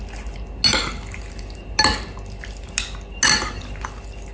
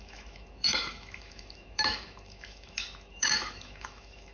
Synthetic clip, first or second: second